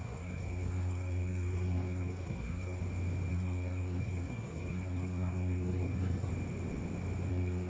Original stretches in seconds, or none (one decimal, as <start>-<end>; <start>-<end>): 2.8-3.3; 6.3-7.3